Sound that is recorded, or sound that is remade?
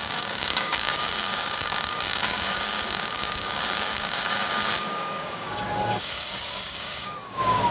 remade